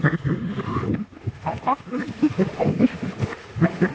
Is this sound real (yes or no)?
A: no